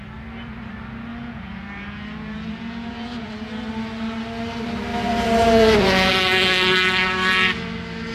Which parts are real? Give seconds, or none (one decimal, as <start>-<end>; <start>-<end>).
0.0-1.1; 3.5-4.9; 6.1-8.1